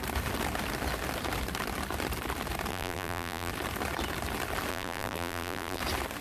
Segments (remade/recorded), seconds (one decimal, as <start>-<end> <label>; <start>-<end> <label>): 0.0-2.7 recorded; 2.7-3.5 remade; 3.5-4.7 recorded; 4.7-5.8 remade; 5.8-6.2 recorded